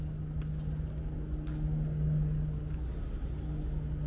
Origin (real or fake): real